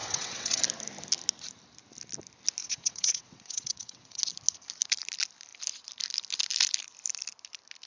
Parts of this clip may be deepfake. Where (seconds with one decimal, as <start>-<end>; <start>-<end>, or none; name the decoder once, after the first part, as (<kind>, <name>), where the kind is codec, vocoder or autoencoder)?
0.0-0.6 (vocoder, WaveNeXt); 2.6-4.2